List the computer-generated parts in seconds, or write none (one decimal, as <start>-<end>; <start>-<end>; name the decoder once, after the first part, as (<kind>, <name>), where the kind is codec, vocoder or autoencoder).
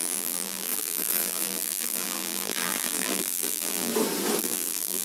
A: 0.0-3.9 (vocoder, BigVGAN v2); 4.4-5.0